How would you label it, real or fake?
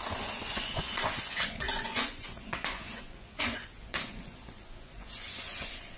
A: fake